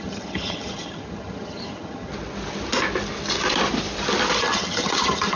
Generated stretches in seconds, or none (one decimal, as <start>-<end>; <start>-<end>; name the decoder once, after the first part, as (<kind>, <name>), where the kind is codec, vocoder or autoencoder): 0.0-2.1 (vocoder, HiFi-GAN); 4.4-5.4